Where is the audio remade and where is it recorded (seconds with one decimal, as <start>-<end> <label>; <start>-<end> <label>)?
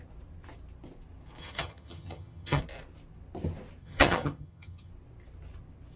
0.0-1.4 recorded; 1.4-2.6 remade; 2.6-3.8 recorded; 3.8-4.9 remade; 4.9-6.0 recorded